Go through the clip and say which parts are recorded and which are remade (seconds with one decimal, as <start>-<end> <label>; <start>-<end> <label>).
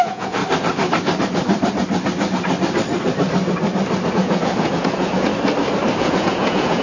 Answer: 0.0-0.4 remade; 0.4-4.1 recorded; 4.1-5.3 remade; 5.3-6.0 recorded; 6.0-6.8 remade